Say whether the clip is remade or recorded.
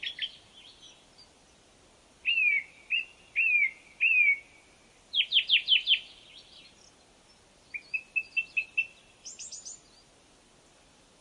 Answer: recorded